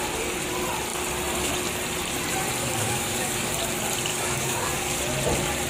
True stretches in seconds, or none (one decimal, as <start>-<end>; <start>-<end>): 0.0-2.6; 3.5-4.1; 5.0-5.7